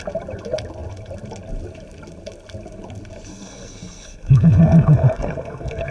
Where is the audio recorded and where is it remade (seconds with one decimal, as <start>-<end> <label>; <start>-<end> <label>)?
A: 0.0-3.3 recorded; 3.3-5.9 remade